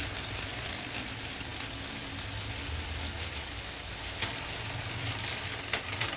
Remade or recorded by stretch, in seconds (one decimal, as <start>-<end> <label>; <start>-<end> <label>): 0.0-6.2 recorded